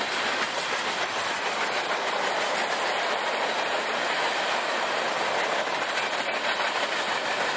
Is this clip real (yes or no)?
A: yes